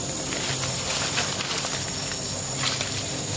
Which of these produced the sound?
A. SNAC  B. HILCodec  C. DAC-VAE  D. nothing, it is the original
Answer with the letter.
D